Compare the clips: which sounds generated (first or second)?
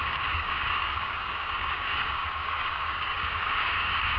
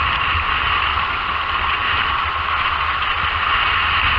first